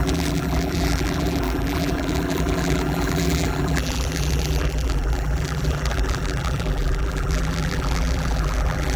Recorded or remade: remade